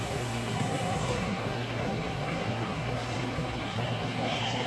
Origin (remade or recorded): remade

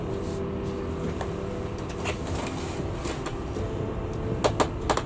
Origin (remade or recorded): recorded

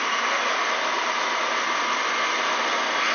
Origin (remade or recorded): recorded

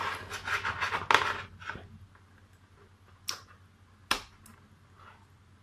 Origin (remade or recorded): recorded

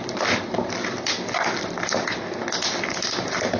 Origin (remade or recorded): recorded